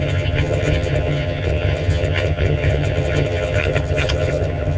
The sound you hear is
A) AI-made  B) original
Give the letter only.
A